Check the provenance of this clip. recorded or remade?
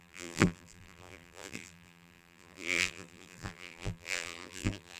remade